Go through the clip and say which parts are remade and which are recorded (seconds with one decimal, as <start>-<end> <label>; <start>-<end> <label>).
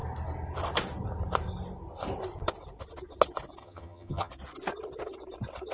0.0-3.6 recorded; 3.6-4.3 remade; 4.3-5.7 recorded